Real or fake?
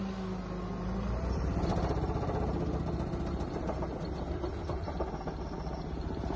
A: real